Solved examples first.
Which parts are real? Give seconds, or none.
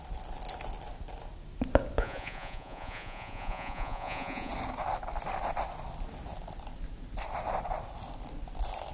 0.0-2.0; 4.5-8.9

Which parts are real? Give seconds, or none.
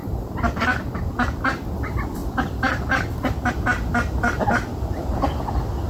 0.0-5.9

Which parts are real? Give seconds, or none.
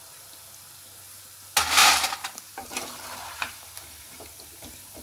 0.0-1.8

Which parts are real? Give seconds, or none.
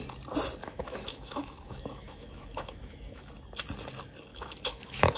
0.0-0.6; 3.3-4.3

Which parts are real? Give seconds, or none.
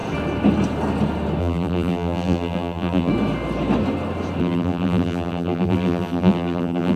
0.0-1.4; 3.1-4.4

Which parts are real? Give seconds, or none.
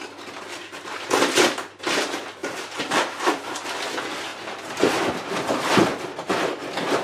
0.0-2.4; 3.6-7.0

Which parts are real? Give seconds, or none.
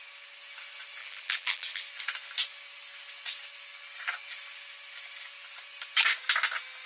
0.0-1.0; 1.8-6.9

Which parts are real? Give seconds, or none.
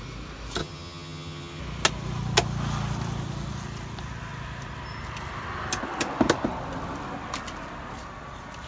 0.0-0.6; 1.6-8.7